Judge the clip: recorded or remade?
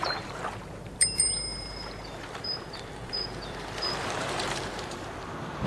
remade